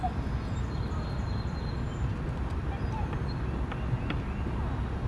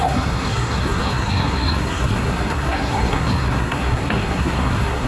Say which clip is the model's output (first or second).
second